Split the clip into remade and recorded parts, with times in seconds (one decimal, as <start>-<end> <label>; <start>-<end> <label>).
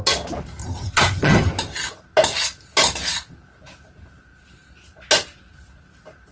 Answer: 0.0-0.6 recorded; 0.6-1.5 remade; 1.5-6.3 recorded